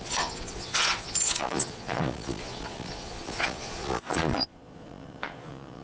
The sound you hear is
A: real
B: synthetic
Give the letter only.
B